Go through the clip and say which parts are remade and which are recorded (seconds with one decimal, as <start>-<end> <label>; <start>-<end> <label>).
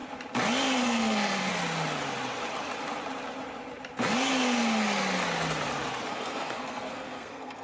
0.0-0.8 recorded; 0.8-1.5 remade; 1.5-6.1 recorded; 6.1-7.6 remade